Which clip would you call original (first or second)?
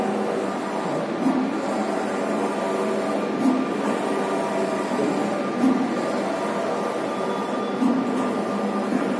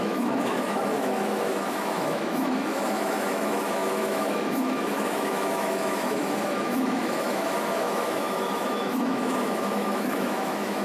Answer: first